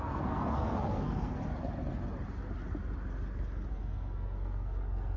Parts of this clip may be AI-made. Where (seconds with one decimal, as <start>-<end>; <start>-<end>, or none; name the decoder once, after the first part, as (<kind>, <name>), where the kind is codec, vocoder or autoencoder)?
0.0-1.4 (codec, SNAC); 3.7-5.2